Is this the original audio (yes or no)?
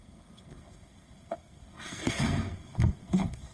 no